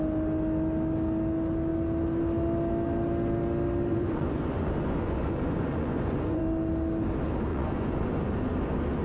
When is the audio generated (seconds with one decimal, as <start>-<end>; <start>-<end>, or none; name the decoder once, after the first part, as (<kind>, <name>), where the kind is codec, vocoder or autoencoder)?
3.9-6.4 (vocoder, Vocos); 7.5-8.2